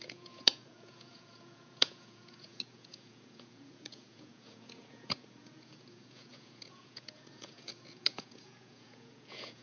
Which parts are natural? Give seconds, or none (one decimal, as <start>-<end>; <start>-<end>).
none